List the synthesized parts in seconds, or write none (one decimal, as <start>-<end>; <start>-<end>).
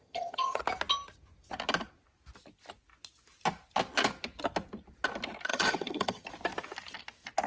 0.0-0.6; 5.5-6.3